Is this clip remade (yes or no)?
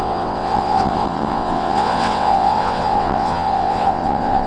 yes